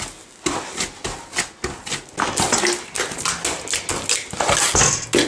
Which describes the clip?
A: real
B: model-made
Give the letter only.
A